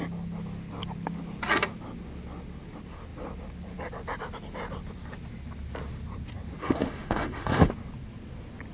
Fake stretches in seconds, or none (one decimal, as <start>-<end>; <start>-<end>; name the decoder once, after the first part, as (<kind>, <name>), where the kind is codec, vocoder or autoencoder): 6.6-7.7 (autoencoder, DAC-VAE)